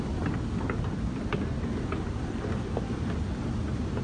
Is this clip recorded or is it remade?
recorded